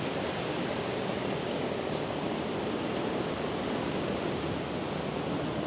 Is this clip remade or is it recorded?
recorded